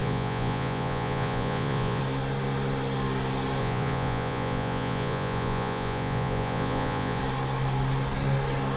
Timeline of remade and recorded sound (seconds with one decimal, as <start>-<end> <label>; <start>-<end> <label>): 0.0-2.0 remade; 2.0-3.6 recorded; 3.6-7.2 remade; 7.2-8.8 recorded